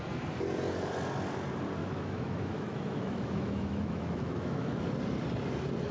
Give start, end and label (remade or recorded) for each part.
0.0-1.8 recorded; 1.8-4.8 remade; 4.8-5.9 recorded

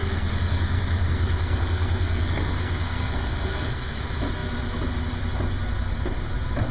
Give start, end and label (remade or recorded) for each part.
0.0-4.0 remade; 4.0-6.7 recorded

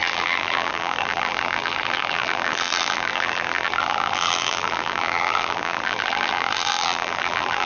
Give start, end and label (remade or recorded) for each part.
0.0-7.7 remade

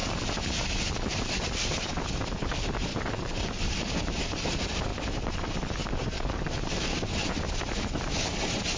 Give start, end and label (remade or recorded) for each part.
0.0-1.7 remade; 1.7-2.9 recorded; 2.9-3.4 remade; 3.4-6.0 recorded; 6.0-7.6 remade; 7.6-8.8 recorded

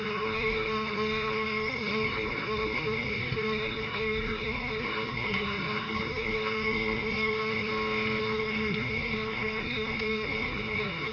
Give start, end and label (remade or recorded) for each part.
0.0-7.7 remade; 7.7-8.2 recorded; 8.2-11.1 remade